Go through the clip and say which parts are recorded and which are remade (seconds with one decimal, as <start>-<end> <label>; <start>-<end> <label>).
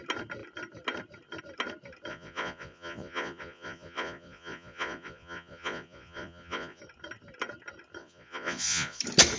0.0-2.1 recorded; 2.1-6.8 remade; 6.8-8.0 recorded; 8.0-9.0 remade; 9.0-9.4 recorded